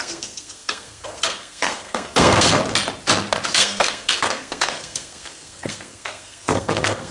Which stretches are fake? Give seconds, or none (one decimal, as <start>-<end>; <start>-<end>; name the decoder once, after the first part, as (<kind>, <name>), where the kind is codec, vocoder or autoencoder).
0.0-2.6 (codec, SNAC); 3.5-7.1